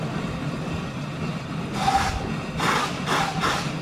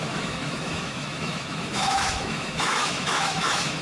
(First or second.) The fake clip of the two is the second